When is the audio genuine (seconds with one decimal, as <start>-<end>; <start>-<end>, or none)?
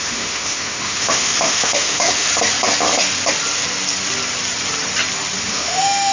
2.3-5.5